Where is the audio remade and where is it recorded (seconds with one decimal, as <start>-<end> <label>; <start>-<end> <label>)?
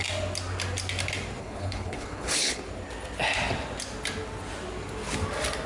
0.0-1.4 recorded; 1.4-2.6 remade; 2.6-5.7 recorded